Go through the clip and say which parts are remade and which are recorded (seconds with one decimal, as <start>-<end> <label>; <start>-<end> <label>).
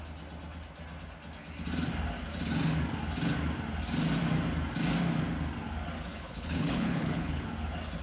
0.0-6.1 recorded; 6.1-7.4 remade; 7.4-8.0 recorded